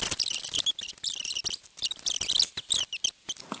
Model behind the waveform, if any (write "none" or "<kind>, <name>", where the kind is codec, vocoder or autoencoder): none